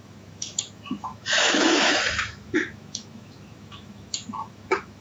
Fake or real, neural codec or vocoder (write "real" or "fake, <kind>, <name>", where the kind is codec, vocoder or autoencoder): fake, autoencoder, DAC-VAE